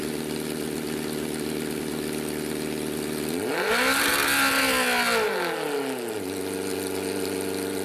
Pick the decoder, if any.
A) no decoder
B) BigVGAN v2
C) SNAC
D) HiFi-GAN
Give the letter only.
A